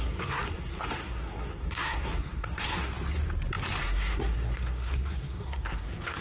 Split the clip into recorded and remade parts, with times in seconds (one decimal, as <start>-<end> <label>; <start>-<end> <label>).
0.0-2.9 remade; 2.9-3.8 recorded; 3.8-6.2 remade